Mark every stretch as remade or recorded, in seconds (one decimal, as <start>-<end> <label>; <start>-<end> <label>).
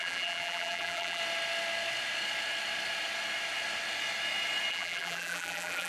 0.0-1.2 remade; 1.2-4.7 recorded; 4.7-5.9 remade